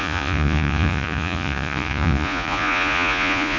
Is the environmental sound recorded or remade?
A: remade